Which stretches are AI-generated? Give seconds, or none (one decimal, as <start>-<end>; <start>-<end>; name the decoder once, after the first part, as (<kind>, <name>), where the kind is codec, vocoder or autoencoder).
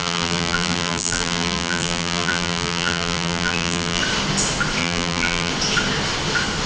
0.0-4.0 (vocoder, BigVGAN v2); 4.8-5.5